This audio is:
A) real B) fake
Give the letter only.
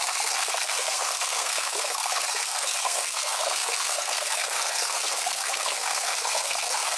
B